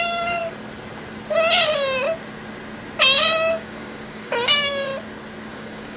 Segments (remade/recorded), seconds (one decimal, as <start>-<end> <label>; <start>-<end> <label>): 0.0-0.4 remade; 0.4-3.2 recorded; 3.2-4.9 remade; 4.9-5.5 recorded; 5.5-6.0 remade